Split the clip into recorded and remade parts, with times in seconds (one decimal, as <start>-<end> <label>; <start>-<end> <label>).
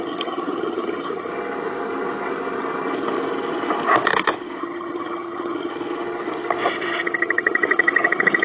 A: 0.0-1.3 remade; 1.3-4.6 recorded; 4.6-5.7 remade; 5.7-6.7 recorded; 6.7-8.4 remade